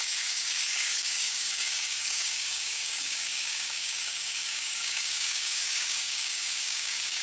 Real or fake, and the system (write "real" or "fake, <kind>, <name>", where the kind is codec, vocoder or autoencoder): fake, codec, DAC